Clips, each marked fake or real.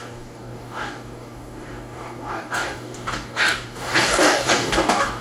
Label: fake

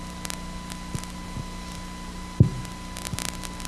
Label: real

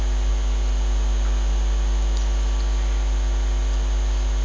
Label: real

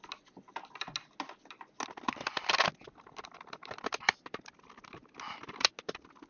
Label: real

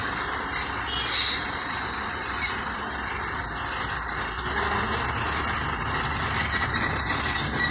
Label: real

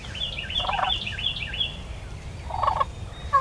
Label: real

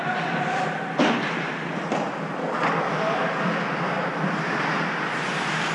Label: real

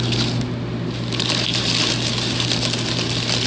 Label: real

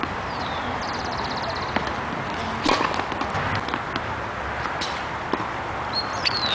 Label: real